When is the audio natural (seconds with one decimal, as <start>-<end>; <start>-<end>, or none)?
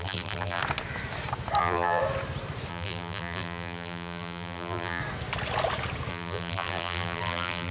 0.6-1.6; 2.0-2.7; 5.0-6.1